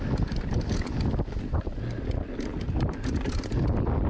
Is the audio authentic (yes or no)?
yes